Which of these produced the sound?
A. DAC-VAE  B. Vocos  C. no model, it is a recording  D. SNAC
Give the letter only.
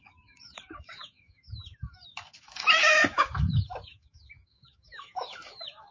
A